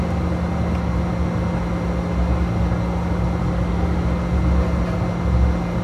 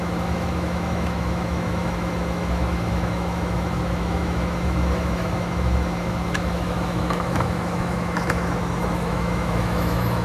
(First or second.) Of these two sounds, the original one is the first